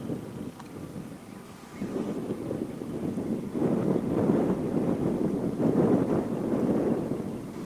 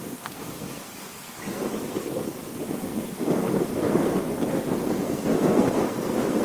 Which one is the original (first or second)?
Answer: first